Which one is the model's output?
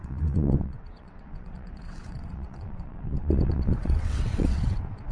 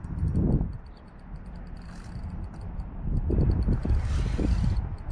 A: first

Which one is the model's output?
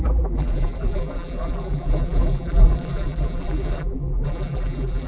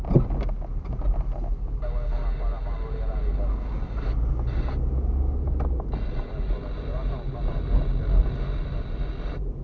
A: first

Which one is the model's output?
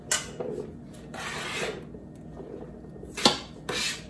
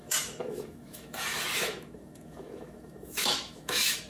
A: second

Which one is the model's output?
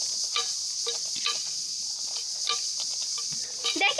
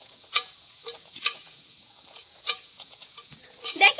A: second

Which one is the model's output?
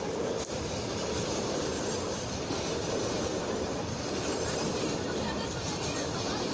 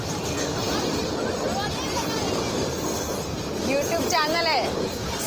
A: first